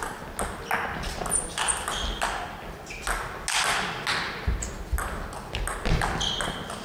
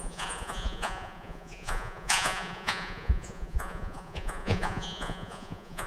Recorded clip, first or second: first